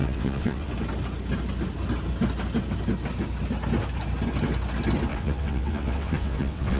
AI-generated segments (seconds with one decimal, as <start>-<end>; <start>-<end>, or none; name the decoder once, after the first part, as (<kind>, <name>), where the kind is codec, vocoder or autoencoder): 0.0-0.7 (vocoder, WaveNeXt); 5.1-6.8